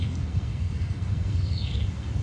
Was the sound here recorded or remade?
remade